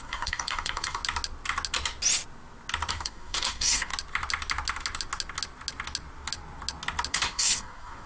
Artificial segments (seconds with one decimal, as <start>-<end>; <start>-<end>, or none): 0.0-1.0; 2.9-3.9; 7.1-8.1